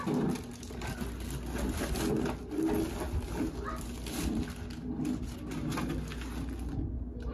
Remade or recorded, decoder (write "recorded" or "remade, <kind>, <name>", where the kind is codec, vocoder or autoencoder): recorded